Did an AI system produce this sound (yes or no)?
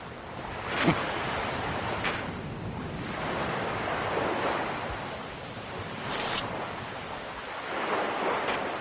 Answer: no